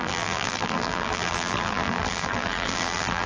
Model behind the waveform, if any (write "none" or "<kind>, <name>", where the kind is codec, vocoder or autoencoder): vocoder, BigVGAN v2